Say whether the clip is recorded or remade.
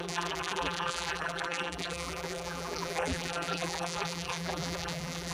remade